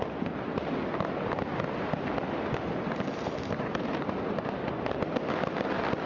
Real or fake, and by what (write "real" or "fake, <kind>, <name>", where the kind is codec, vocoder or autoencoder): real